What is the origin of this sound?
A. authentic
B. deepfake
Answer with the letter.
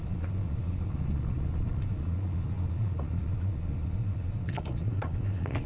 B